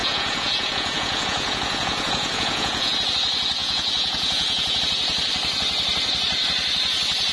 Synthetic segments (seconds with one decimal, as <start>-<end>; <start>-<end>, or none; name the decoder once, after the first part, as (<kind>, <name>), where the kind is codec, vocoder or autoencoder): 0.0-3.1 (vocoder, Vocos); 3.6-4.8